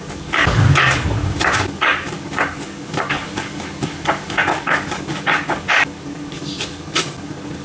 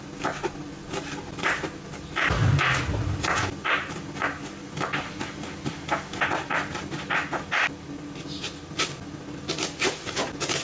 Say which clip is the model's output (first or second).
first